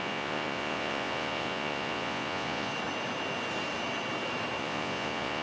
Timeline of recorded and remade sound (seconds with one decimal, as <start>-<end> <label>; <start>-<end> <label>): 0.0-2.7 remade; 2.7-4.6 recorded; 4.6-5.4 remade